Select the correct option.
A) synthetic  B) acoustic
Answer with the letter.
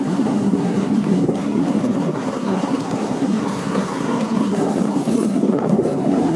A